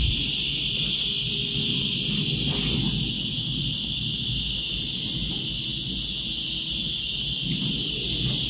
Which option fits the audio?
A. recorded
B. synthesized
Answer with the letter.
A